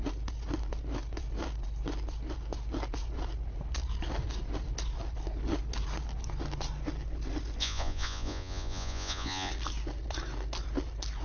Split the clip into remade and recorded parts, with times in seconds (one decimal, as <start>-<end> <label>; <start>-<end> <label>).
0.0-7.6 recorded; 7.6-9.5 remade; 9.5-11.2 recorded